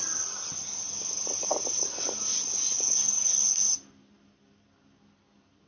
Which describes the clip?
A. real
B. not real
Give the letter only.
A